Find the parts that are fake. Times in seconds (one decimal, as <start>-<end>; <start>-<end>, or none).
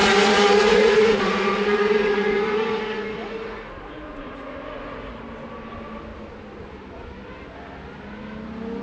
0.0-5.2